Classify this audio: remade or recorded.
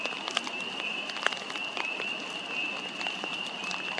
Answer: recorded